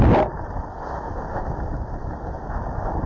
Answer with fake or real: real